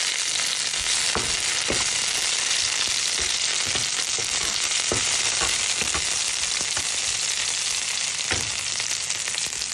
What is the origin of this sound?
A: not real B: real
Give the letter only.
B